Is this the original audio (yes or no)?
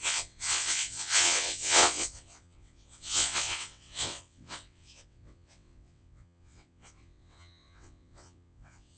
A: no